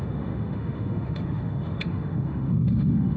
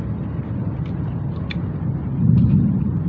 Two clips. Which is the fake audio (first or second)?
first